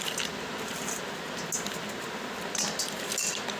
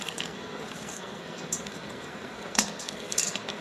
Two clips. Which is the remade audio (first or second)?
second